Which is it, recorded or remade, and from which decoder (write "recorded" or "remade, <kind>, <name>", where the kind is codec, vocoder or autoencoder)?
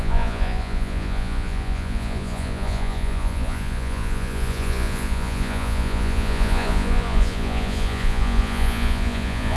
remade, vocoder, Vocos